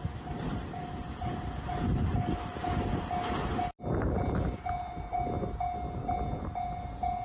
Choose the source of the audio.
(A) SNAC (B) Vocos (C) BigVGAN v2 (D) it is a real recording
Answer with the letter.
D